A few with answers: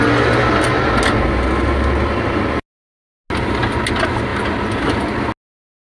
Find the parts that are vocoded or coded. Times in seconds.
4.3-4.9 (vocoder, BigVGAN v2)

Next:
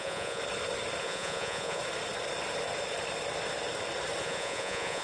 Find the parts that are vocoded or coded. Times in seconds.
0.0-0.4 (vocoder, Vocos); 1.0-1.8; 4.2-5.0

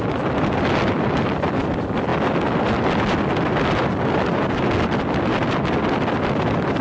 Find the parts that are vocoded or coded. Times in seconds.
none

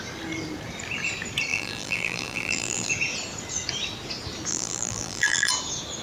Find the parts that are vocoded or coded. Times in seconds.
1.5-2.9 (vocoder, BigVGAN v2); 4.5-5.5